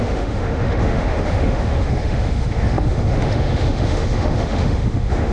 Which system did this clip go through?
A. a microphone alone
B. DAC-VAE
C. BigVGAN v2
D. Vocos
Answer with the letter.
B